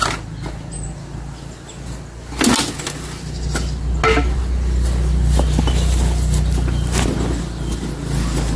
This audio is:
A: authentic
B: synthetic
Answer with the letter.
A